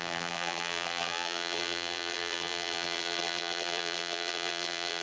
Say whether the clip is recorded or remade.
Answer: remade